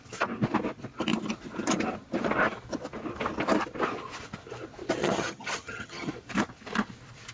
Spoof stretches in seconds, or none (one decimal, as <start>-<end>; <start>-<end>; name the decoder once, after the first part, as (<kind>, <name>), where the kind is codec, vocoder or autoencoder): 5.0-6.1 (vocoder, HiFi-GAN)